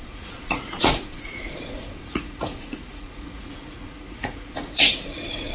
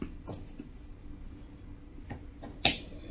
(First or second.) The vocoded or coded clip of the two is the first